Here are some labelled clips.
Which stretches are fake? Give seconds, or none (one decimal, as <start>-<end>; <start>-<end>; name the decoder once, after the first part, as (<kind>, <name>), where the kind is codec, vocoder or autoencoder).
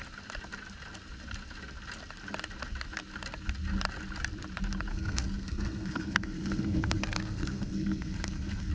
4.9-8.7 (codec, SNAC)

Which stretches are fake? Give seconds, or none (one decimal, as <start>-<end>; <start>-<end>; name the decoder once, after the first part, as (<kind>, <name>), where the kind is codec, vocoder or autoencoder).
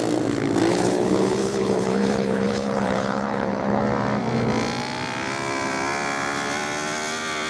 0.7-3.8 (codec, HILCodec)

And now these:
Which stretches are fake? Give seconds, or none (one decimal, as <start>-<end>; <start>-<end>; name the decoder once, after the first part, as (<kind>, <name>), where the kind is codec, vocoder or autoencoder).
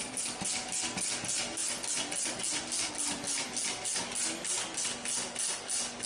none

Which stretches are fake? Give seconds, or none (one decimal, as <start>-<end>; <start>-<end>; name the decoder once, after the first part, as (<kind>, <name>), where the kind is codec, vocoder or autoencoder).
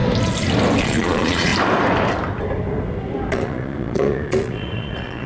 0.8-1.5 (vocoder, Vocos); 3.3-5.3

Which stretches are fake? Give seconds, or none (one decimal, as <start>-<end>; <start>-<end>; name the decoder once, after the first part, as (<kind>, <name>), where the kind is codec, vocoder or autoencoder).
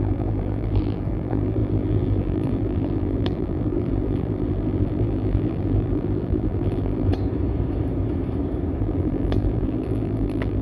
0.0-7.1 (vocoder, BigVGAN v2); 8.8-10.6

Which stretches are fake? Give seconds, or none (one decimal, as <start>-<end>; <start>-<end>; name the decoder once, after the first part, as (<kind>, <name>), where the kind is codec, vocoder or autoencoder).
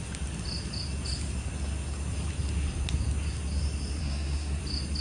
4.0-4.6 (codec, SNAC)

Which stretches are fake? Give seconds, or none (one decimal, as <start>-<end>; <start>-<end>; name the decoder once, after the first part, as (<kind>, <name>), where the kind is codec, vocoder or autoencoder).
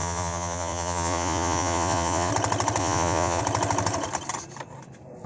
0.0-2.3 (vocoder, Vocos); 2.8-3.4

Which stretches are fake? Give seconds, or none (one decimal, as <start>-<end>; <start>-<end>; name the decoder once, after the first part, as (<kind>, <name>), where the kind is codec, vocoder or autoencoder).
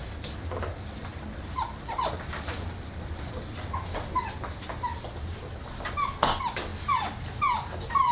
none